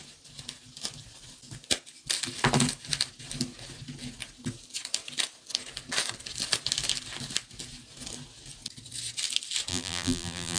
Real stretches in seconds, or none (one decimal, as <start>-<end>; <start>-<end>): 0.0-9.7